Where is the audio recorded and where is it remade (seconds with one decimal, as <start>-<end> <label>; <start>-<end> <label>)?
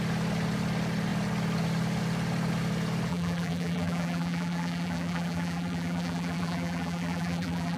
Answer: 0.0-3.1 recorded; 3.1-7.8 remade